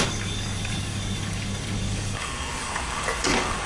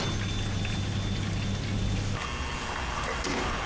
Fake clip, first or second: first